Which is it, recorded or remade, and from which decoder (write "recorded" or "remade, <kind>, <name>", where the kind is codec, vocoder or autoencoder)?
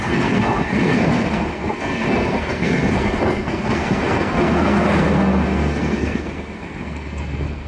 remade, codec, SNAC